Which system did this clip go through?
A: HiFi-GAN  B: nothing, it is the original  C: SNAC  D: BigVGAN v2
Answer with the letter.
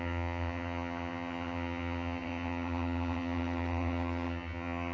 A